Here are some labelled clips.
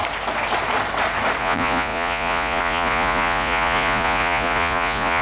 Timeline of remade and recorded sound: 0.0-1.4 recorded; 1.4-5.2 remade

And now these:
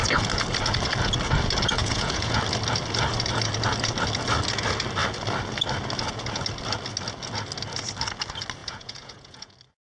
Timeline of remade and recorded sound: 0.0-1.8 recorded; 1.8-2.4 remade; 2.4-8.6 recorded; 8.6-9.5 remade; 9.5-9.9 recorded

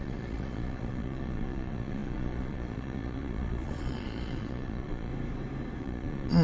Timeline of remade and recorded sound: 0.0-5.1 remade; 5.1-5.8 recorded; 5.8-6.4 remade

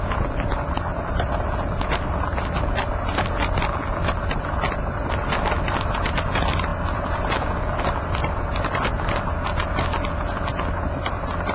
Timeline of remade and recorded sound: 0.0-11.5 recorded

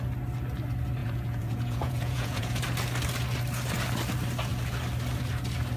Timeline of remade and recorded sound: 0.0-1.0 recorded; 1.0-2.6 remade; 2.6-5.8 recorded

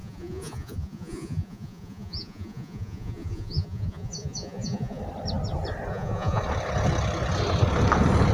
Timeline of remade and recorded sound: 0.0-5.0 remade; 5.0-5.9 recorded; 5.9-6.4 remade; 6.4-8.3 recorded

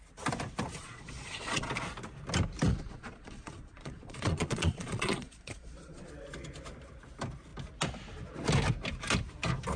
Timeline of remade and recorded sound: 0.0-0.8 recorded; 0.8-1.7 remade; 1.7-2.7 recorded; 2.7-6.1 remade; 6.1-9.8 recorded